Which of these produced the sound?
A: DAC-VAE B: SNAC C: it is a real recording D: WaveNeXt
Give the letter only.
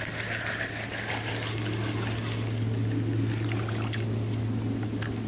C